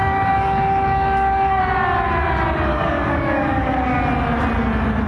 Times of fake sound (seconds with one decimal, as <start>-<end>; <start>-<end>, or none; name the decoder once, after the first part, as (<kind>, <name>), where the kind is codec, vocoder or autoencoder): 0.0-1.6 (codec, DAC); 2.7-4.0